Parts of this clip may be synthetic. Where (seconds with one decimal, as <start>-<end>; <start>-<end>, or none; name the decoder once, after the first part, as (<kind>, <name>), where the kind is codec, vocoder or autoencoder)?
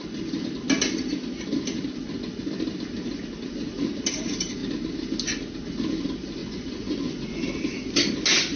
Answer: 6.4-7.4 (vocoder, Vocos)